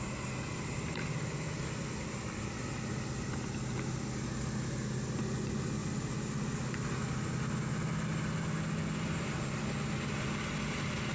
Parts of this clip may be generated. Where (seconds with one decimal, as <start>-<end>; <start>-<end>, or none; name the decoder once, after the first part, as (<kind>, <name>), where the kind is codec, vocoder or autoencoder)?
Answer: none